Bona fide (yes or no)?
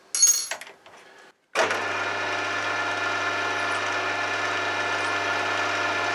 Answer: yes